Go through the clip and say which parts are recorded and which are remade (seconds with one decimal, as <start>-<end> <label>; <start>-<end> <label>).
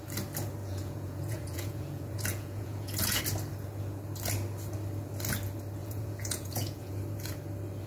0.0-0.6 recorded; 0.6-3.2 remade; 3.2-5.8 recorded; 5.8-6.9 remade; 6.9-7.9 recorded